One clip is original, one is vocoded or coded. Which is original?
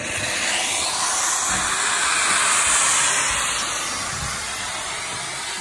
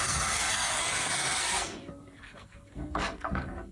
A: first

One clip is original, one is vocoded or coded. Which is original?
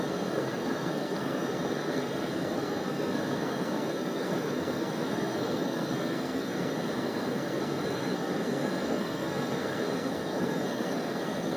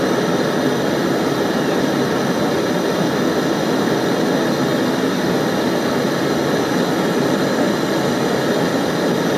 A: second